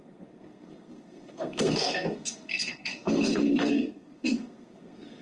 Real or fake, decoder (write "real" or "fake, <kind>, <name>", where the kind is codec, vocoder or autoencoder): fake, codec, SNAC